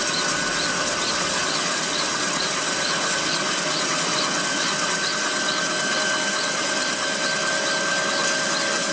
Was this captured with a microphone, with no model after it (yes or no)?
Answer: yes